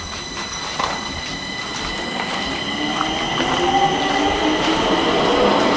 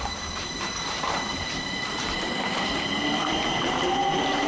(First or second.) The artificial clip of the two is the second